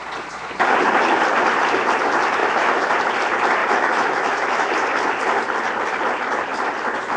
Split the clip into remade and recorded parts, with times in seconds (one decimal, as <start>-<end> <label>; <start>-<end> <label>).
0.0-2.4 recorded; 2.4-2.9 remade; 2.9-3.6 recorded; 3.6-4.7 remade; 4.7-7.2 recorded